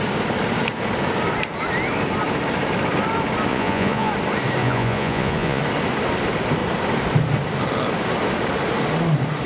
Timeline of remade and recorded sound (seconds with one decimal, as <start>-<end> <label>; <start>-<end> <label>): 0.0-3.5 recorded; 3.5-4.1 remade; 4.1-4.6 recorded; 4.6-5.6 remade; 5.6-9.5 recorded